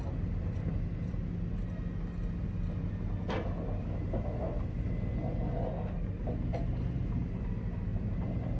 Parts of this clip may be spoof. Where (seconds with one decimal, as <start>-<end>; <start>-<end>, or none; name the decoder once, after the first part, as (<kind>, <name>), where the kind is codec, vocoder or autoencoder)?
none